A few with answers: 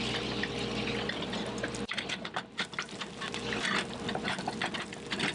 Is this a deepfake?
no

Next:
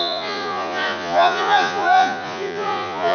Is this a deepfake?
yes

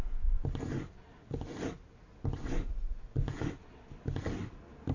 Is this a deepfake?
no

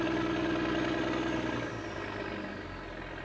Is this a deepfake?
no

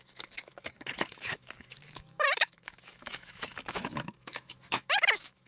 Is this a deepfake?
yes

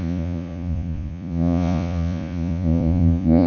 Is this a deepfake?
yes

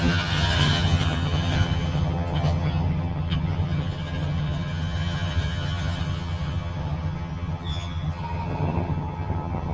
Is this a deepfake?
yes